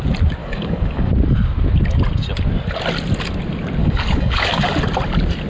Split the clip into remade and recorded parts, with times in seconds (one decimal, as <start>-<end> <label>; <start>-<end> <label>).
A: 0.0-0.4 recorded; 0.4-1.1 remade; 1.1-3.8 recorded; 3.8-4.7 remade; 4.7-5.5 recorded